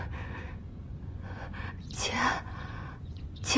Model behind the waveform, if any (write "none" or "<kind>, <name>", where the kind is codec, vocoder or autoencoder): vocoder, Vocos